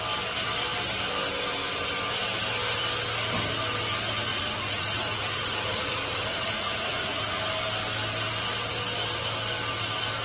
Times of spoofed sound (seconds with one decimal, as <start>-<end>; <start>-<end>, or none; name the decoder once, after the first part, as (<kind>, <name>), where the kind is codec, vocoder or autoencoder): 4.3-7.4 (vocoder, Vocos)